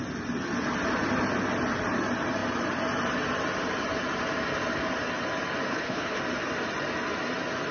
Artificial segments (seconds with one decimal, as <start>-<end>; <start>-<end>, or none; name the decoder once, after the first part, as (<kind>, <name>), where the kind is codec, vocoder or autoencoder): 5.7-6.2 (codec, HILCodec)